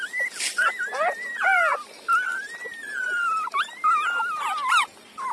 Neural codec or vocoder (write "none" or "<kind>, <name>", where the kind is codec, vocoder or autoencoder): none